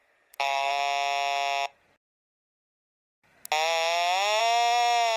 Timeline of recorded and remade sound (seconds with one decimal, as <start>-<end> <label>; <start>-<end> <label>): 0.0-0.7 remade; 0.7-5.2 recorded